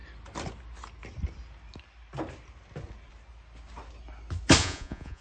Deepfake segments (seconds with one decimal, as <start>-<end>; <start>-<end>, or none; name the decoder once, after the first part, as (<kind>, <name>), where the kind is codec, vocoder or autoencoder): 4.6-5.2 (vocoder, Vocos)